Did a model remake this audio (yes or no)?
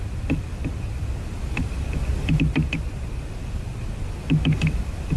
no